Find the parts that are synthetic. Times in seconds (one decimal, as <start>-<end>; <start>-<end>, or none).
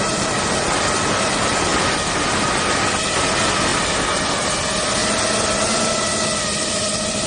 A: none